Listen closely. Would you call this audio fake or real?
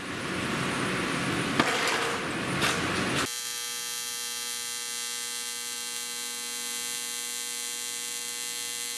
real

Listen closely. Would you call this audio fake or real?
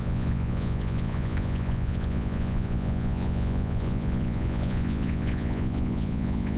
fake